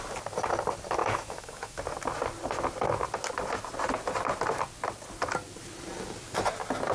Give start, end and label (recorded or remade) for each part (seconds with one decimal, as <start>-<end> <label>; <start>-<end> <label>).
0.0-1.0 recorded; 1.0-1.8 remade; 1.8-6.9 recorded